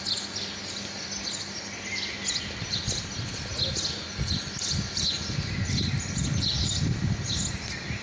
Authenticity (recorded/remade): recorded